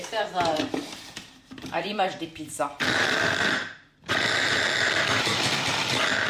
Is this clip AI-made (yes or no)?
yes